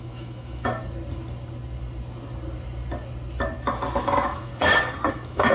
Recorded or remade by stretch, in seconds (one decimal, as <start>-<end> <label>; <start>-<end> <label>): 0.0-0.7 remade; 0.7-4.0 recorded; 4.0-4.5 remade; 4.5-5.1 recorded; 5.1-5.5 remade